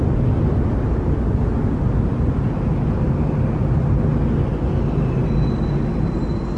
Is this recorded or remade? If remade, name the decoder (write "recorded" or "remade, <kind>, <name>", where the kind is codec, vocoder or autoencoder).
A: recorded